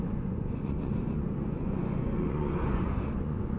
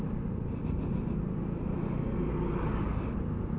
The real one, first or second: second